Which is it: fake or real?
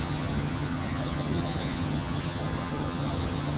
fake